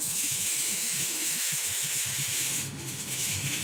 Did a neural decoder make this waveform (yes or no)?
yes